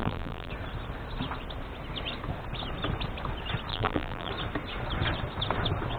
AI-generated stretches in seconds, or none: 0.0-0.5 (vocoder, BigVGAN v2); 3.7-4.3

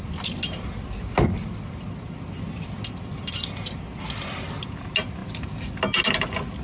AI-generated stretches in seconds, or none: 5.2-5.7 (vocoder, BigVGAN v2)

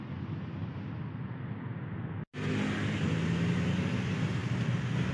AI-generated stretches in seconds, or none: none